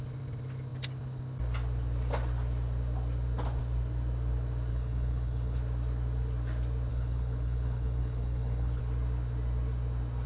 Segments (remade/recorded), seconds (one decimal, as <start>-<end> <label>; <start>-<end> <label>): 0.0-4.7 recorded; 4.7-5.6 remade; 5.6-6.9 recorded; 6.9-8.8 remade; 8.8-10.3 recorded